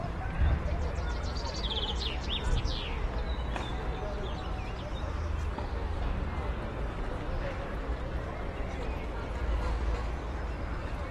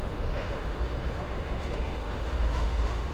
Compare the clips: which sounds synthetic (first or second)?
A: second